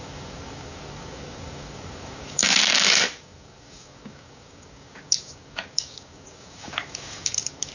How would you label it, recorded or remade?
remade